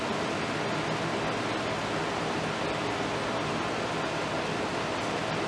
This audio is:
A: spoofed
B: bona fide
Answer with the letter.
B